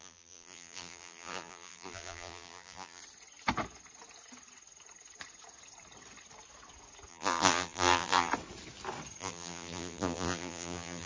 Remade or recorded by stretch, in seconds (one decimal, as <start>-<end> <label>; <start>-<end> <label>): 0.0-3.0 remade; 3.0-7.1 recorded; 7.1-8.3 remade; 8.3-9.2 recorded; 9.2-11.1 remade